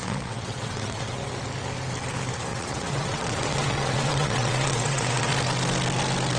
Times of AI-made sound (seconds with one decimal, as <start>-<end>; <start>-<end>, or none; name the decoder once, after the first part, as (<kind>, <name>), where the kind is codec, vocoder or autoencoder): 0.0-1.3 (vocoder, WaveNeXt); 2.5-5.3